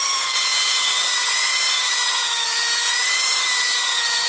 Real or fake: fake